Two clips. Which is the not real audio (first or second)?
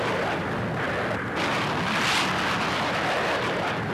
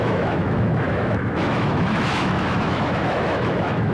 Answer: second